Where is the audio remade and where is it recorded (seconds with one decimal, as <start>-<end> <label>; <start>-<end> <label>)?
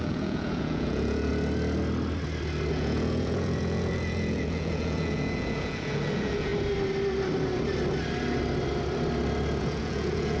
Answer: 0.0-1.3 remade; 1.3-2.7 recorded; 2.7-6.5 remade; 6.5-9.6 recorded; 9.6-10.4 remade